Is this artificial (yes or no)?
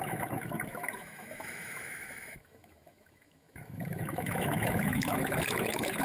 yes